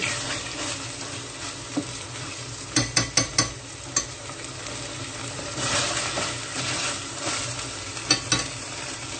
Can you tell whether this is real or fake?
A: real